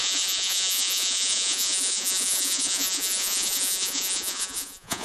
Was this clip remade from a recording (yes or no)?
yes